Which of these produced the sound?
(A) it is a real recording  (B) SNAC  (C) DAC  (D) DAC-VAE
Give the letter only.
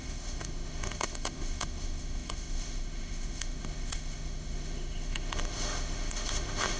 D